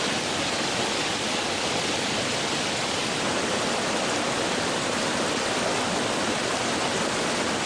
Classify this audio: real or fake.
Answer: real